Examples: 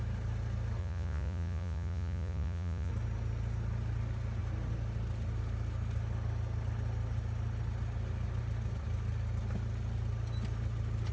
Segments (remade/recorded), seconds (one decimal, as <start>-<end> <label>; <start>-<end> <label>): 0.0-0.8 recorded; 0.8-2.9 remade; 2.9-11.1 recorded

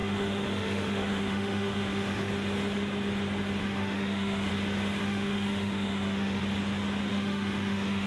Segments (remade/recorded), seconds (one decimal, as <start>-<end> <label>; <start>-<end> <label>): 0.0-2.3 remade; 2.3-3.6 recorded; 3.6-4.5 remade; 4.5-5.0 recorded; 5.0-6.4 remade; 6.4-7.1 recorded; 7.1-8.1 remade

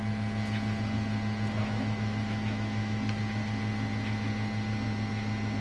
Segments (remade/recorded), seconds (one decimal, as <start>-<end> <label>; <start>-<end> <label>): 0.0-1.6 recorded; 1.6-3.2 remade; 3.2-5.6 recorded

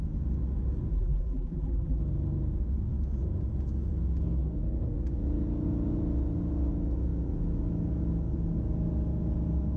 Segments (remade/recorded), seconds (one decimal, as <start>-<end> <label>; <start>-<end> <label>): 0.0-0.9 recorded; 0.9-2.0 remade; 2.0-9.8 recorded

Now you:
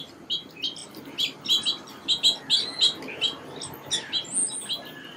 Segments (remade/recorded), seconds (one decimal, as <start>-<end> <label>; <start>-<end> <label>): 0.0-5.2 recorded

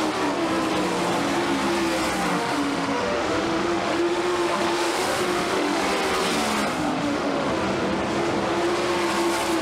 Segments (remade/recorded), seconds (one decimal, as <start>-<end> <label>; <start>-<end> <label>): 0.0-2.3 recorded; 2.3-5.8 remade; 5.8-6.7 recorded; 6.7-7.5 remade; 7.5-9.6 recorded

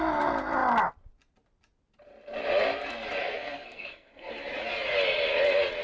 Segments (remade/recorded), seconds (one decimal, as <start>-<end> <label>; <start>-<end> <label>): 0.0-3.2 recorded; 3.2-4.3 remade; 4.3-5.8 recorded

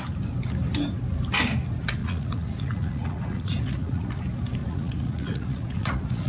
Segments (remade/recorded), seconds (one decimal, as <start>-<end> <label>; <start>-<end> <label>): 0.0-2.0 recorded; 2.0-4.1 remade; 4.1-4.6 recorded; 4.6-6.3 remade